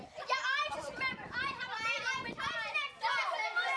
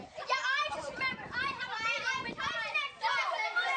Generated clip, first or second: second